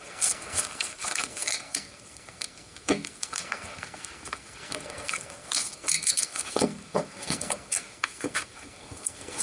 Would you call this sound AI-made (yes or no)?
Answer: yes